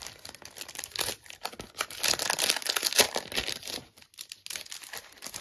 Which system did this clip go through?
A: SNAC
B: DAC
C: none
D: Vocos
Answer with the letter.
C